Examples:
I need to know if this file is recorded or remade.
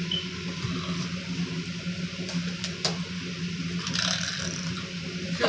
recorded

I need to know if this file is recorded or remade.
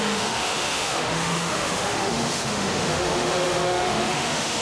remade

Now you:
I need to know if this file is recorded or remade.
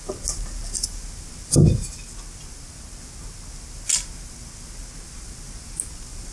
recorded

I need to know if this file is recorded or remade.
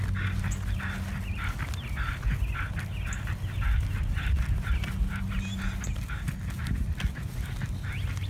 recorded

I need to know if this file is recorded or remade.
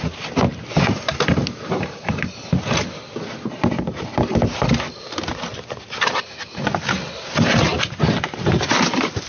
recorded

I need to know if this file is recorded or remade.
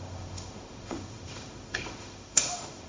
remade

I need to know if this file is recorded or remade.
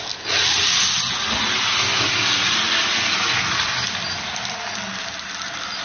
recorded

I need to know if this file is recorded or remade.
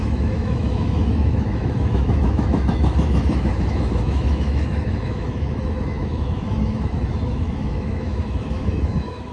remade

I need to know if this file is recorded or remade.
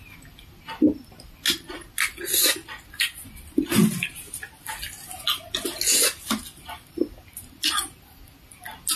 recorded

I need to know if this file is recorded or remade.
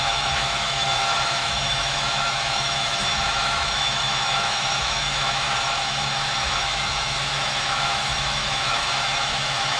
remade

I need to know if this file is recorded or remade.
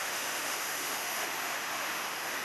remade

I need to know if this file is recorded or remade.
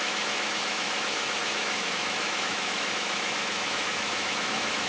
remade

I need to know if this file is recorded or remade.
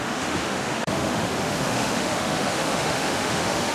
remade